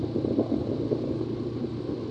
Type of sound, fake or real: real